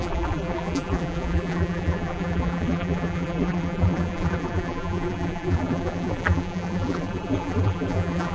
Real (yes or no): no